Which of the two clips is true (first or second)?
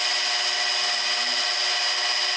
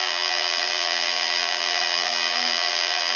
first